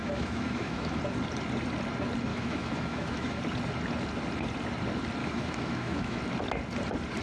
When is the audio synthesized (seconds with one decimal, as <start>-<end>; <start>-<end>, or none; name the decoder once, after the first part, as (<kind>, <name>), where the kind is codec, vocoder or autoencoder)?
0.0-1.0 (autoencoder, DAC-VAE); 2.3-3.4; 5.2-6.2